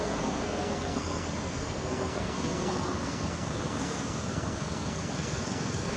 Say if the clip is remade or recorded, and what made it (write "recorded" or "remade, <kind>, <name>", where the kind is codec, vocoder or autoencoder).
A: remade, codec, SNAC